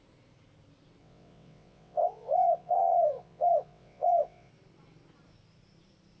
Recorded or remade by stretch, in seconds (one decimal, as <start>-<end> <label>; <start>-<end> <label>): 0.0-1.0 recorded; 1.0-4.5 remade; 4.5-6.2 recorded